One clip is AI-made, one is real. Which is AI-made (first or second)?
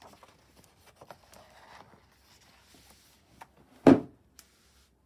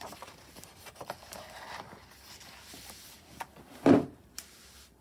second